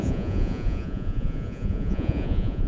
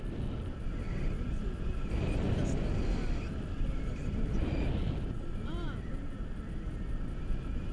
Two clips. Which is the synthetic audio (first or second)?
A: first